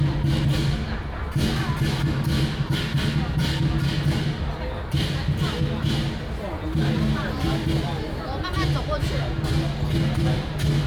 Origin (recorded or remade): recorded